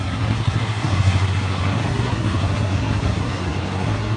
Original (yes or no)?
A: no